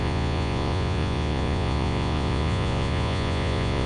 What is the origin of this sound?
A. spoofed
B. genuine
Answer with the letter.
A